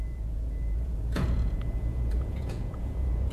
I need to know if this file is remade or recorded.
remade